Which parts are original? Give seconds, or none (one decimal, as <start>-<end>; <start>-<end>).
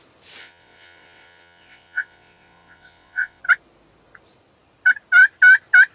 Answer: 0.0-0.4; 3.4-5.9